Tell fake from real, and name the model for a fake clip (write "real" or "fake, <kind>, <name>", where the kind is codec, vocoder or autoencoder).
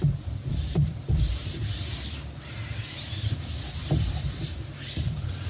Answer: fake, vocoder, BigVGAN v2